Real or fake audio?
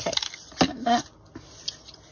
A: real